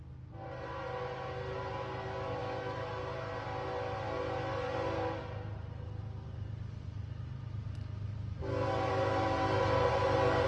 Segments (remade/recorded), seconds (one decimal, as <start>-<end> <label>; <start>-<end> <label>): 0.0-2.4 recorded; 2.4-3.0 remade; 3.0-10.5 recorded